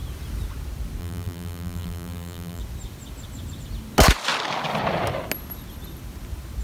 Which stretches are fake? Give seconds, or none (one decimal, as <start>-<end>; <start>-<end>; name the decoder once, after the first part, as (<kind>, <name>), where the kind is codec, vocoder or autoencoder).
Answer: 1.0-2.6 (vocoder, BigVGAN v2)